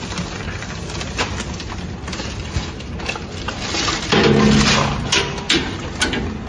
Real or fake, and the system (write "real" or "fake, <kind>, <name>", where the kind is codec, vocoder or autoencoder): real